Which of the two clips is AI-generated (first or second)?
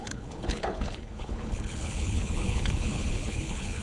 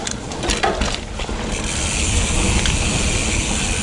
first